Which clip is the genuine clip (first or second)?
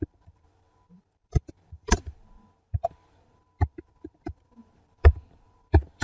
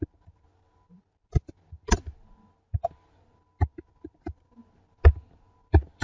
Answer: second